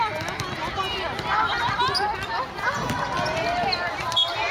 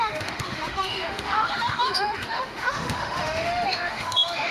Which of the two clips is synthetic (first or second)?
second